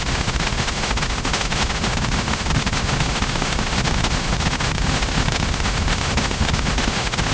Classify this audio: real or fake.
fake